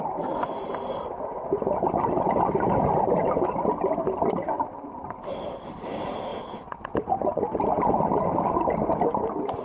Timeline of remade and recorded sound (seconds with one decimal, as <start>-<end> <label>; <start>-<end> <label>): 0.0-6.3 recorded; 6.3-7.1 remade; 7.1-9.6 recorded